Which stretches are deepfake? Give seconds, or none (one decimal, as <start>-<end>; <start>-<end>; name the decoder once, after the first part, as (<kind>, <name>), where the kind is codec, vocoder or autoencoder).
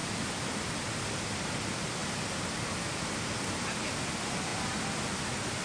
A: none